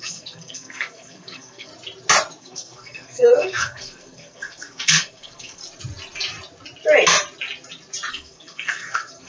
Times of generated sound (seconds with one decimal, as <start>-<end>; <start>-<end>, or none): 0.0-1.7; 2.4-5.6; 8.1-9.3

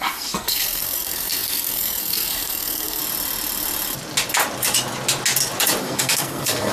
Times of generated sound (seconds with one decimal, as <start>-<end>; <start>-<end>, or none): 0.0-3.0; 5.8-6.7

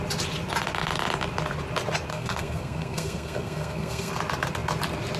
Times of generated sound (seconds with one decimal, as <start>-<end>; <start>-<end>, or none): 2.1-4.1

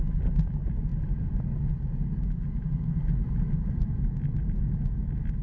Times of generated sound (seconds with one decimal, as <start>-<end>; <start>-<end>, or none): none

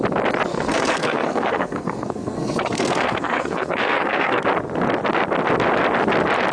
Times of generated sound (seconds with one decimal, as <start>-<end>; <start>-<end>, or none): 0.5-4.4

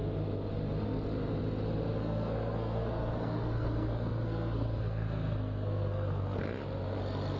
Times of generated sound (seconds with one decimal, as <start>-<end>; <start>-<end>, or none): 2.0-6.4

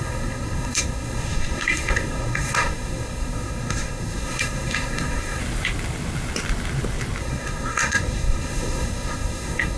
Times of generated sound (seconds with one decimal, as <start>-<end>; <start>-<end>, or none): 0.0-5.4; 7.2-9.8